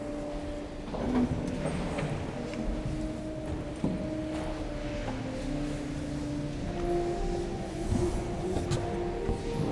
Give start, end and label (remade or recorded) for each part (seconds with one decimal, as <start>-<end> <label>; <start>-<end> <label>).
0.0-7.5 recorded; 7.5-8.6 remade; 8.6-9.7 recorded